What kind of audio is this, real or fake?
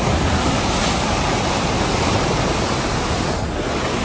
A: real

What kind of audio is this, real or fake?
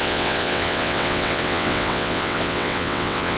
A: fake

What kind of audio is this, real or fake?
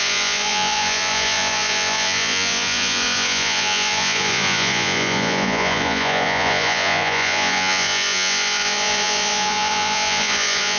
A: fake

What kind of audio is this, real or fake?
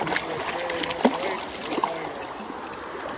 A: real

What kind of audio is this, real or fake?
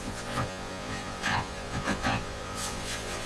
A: fake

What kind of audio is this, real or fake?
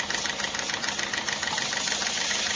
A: real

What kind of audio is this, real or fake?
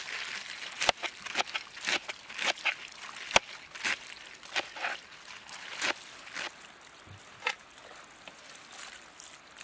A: real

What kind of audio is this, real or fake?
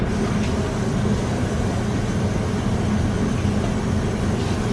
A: real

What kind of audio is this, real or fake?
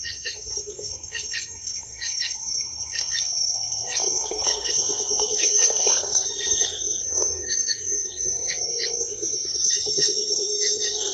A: fake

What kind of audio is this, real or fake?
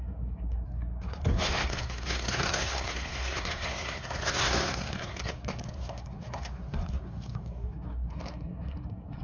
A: fake